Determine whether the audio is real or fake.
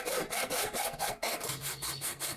fake